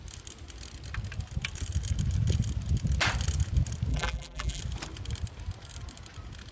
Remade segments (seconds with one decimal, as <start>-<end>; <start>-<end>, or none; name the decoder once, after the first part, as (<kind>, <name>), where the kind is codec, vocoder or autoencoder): 3.9-4.6 (vocoder, BigVGAN v2)